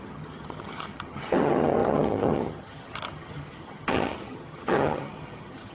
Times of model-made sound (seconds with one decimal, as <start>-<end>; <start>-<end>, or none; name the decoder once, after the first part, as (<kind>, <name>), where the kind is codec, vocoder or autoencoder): 0.0-5.7 (vocoder, HiFi-GAN)